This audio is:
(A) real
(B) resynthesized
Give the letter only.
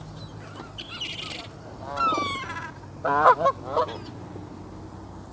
A